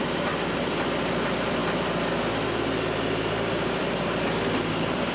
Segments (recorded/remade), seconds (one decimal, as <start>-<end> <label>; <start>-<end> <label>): 0.0-1.6 remade; 1.6-3.2 recorded; 3.2-5.1 remade